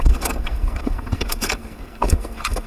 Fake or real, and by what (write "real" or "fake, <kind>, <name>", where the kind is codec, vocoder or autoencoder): fake, codec, SNAC